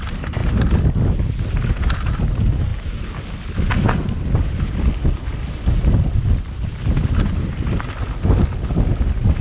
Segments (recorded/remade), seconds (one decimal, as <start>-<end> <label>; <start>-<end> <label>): 0.0-9.4 recorded